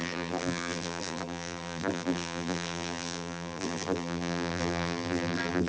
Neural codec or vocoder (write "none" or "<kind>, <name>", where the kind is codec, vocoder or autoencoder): vocoder, BigVGAN v2